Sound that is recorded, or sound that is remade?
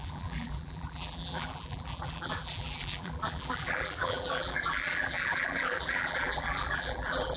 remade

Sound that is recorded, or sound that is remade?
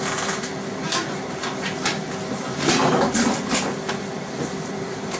recorded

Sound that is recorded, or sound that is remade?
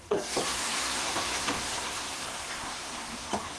remade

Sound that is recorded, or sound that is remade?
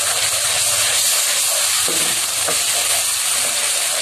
recorded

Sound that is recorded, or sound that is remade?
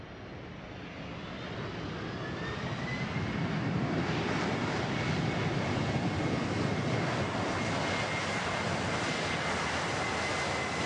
recorded